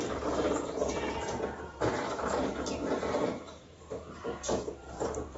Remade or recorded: remade